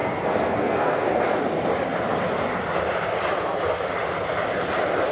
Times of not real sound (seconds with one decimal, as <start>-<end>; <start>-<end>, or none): 0.0-1.2